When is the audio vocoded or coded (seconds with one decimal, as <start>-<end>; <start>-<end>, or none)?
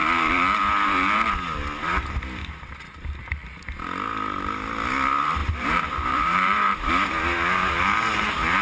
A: 5.4-6.9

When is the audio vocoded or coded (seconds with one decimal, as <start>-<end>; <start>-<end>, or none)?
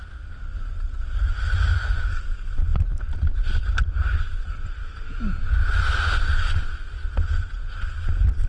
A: 2.7-3.4; 7.0-7.7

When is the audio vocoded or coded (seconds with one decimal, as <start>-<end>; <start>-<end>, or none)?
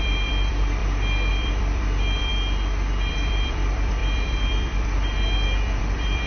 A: 0.0-0.8; 1.3-2.3; 3.1-6.3